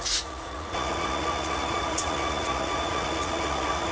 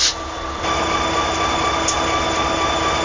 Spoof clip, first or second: first